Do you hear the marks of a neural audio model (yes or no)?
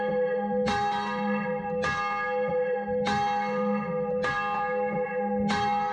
no